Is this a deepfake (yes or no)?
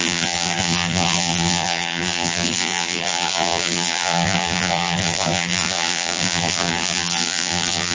yes